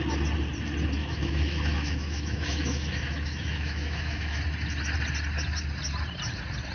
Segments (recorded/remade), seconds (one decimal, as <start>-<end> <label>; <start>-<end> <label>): 0.0-1.0 recorded; 1.0-4.4 remade; 4.4-6.7 recorded